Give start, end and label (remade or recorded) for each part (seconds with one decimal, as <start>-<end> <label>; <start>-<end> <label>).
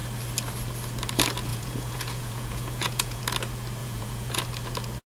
0.0-1.5 recorded; 1.5-3.2 remade; 3.2-3.8 recorded; 3.8-4.4 remade; 4.4-5.1 recorded